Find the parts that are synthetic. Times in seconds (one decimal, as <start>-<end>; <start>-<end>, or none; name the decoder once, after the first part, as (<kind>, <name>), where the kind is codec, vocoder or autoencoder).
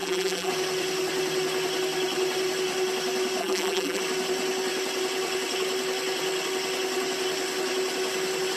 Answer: 0.0-0.5 (vocoder, BigVGAN v2); 3.4-4.0